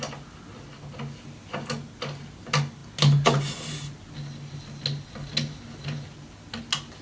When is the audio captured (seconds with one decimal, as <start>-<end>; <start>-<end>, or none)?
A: 0.0-7.0